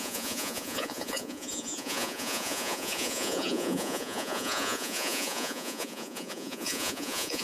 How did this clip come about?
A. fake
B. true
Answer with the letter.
A